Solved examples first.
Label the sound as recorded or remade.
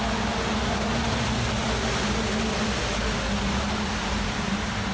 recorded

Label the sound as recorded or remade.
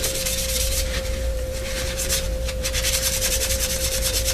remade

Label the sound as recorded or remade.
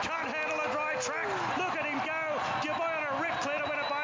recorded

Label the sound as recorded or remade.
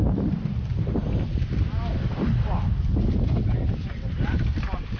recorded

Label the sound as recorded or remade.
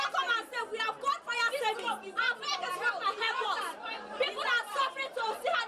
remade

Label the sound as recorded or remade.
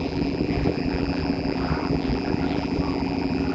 remade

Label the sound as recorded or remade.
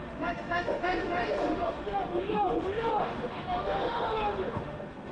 remade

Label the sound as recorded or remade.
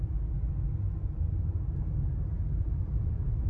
recorded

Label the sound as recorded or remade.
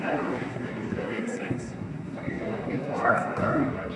remade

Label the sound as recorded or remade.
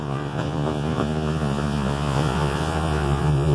remade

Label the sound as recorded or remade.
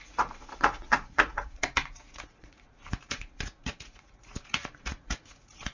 remade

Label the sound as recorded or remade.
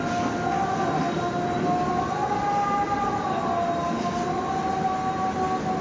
recorded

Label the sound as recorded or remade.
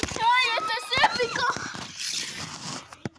recorded